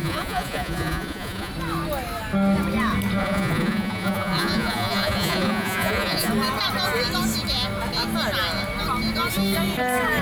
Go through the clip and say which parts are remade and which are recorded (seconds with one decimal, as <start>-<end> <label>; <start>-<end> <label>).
0.0-1.5 remade; 1.5-3.2 recorded; 3.2-6.3 remade; 6.3-10.2 recorded